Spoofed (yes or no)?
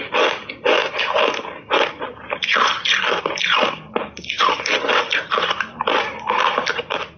no